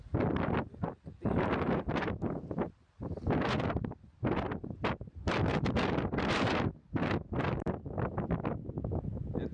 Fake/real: real